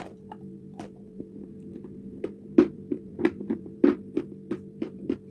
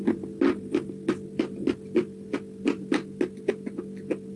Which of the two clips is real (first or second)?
second